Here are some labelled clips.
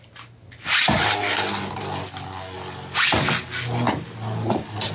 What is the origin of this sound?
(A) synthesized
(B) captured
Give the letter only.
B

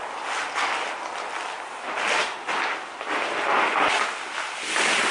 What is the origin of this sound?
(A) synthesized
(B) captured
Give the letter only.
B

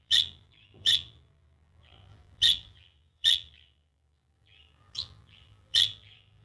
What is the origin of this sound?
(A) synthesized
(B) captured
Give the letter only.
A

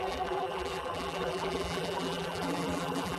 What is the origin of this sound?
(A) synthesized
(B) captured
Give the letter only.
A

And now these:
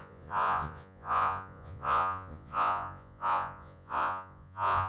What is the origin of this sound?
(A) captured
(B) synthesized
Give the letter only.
B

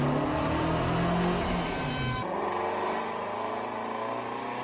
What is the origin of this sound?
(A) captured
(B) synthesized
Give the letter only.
A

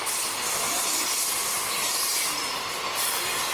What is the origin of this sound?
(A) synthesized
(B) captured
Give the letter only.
B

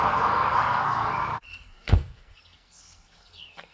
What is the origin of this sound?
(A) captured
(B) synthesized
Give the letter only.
B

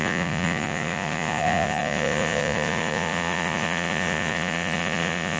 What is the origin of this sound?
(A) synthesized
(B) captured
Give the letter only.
A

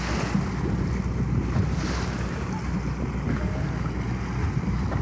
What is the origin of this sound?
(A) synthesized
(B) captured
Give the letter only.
B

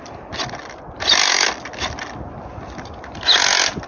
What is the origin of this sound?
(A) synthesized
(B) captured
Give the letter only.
B